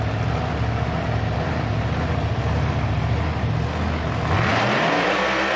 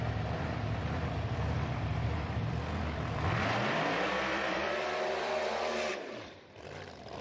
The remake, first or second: second